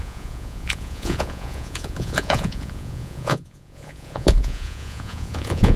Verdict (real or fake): fake